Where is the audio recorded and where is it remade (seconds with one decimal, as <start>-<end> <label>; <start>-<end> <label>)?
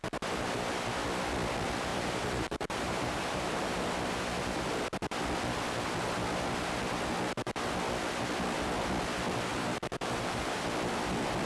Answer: 0.0-1.9 recorded; 1.9-3.8 remade; 3.8-9.5 recorded; 9.5-10.6 remade; 10.6-11.5 recorded